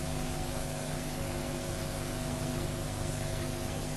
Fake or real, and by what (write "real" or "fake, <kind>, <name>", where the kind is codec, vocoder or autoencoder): fake, codec, SNAC